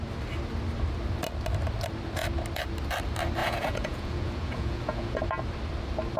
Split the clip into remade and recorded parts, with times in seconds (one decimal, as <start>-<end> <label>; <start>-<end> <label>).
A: 0.0-3.4 recorded; 3.4-5.2 remade; 5.2-6.2 recorded

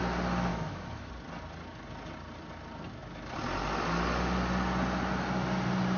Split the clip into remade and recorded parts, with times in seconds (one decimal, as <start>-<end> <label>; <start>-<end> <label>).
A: 0.0-0.5 recorded; 0.5-1.1 remade; 1.1-6.0 recorded

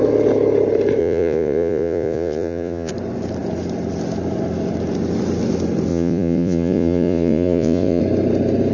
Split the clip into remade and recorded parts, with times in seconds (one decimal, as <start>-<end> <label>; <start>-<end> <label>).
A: 0.0-1.0 recorded; 1.0-2.9 remade; 2.9-5.9 recorded; 5.9-8.0 remade; 8.0-8.7 recorded

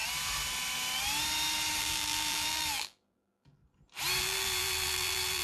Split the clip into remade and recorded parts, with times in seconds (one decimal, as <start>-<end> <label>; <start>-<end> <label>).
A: 0.0-1.8 recorded; 1.8-3.6 remade; 3.6-4.2 recorded; 4.2-5.4 remade

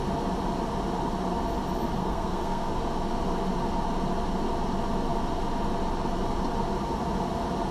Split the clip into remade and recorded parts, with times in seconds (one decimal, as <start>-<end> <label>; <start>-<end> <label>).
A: 0.0-2.0 recorded; 2.0-2.7 remade; 2.7-7.7 recorded